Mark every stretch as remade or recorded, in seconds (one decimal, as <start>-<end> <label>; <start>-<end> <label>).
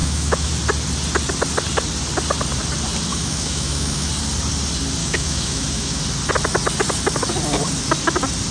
0.0-0.5 remade; 0.5-3.1 recorded; 3.1-4.1 remade; 4.1-5.0 recorded; 5.0-6.0 remade; 6.0-8.5 recorded